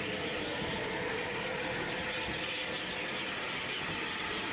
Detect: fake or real real